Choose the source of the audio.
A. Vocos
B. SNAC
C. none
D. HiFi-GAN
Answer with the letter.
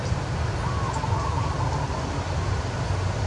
C